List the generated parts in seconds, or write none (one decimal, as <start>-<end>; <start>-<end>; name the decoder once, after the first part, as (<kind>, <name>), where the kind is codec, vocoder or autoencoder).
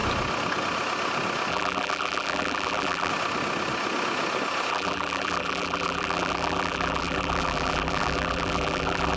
1.5-3.1 (vocoder, BigVGAN v2); 4.7-9.2